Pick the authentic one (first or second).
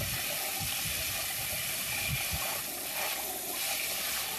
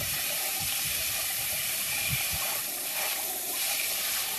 first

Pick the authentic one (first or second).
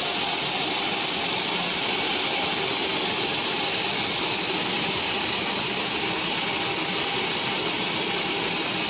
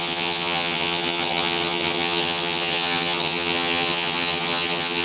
first